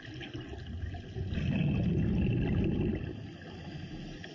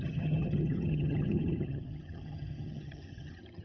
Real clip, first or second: first